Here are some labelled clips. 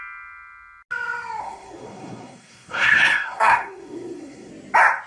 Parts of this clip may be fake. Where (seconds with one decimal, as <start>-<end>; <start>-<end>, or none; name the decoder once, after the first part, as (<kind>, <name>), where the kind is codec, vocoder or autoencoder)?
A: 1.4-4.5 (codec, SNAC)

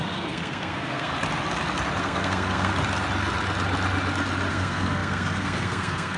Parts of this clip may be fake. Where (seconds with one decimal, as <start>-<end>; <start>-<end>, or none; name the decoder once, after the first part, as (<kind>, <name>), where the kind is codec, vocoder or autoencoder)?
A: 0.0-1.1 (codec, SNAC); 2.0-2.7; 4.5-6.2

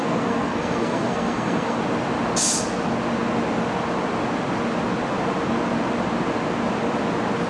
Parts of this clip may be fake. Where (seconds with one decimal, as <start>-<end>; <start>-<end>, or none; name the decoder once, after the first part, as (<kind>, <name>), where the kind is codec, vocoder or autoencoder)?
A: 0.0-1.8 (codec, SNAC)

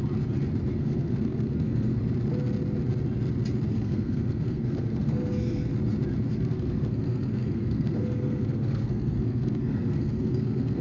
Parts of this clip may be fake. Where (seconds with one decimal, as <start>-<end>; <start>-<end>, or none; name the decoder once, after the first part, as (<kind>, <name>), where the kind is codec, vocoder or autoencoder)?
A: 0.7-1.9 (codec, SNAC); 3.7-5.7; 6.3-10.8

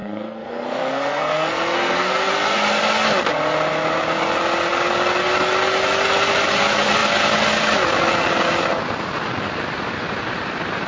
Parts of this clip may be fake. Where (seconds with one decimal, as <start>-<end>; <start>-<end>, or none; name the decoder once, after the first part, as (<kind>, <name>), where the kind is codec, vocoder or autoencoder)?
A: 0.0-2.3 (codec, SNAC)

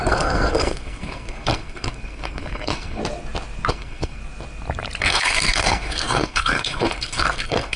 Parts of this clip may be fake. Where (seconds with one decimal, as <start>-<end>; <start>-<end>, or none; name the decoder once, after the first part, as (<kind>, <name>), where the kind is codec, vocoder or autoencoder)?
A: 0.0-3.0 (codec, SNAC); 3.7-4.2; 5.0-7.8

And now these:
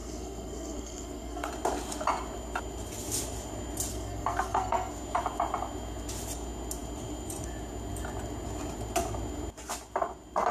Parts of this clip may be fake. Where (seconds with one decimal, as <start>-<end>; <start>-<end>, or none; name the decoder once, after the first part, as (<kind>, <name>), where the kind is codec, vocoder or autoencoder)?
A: 0.0-1.5 (codec, SNAC); 3.9-4.9

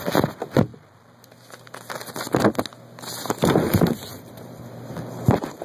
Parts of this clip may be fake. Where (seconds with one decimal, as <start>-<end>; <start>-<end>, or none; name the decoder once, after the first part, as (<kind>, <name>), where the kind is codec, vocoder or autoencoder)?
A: none